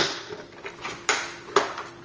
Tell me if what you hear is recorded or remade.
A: recorded